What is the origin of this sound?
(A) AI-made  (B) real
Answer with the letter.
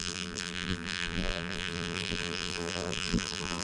A